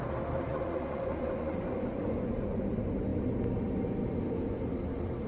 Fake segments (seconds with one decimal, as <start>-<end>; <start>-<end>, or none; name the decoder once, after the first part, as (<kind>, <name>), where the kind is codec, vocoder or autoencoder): 0.5-2.6 (vocoder, Vocos)